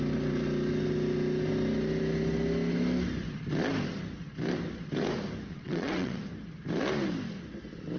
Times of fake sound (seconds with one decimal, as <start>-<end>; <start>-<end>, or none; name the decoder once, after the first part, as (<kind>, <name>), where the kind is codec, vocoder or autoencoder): 5.5-6.2 (vocoder, WaveNeXt)